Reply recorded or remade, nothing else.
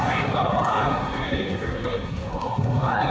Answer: remade